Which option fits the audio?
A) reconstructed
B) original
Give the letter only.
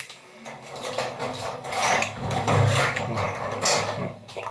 A